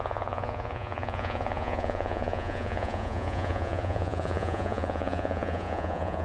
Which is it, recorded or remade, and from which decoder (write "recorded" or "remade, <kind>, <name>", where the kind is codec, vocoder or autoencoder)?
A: remade, vocoder, Vocos